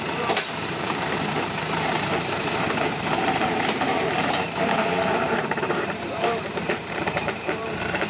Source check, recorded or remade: remade